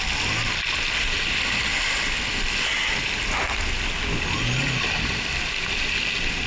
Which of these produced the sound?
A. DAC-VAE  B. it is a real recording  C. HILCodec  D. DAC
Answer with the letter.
B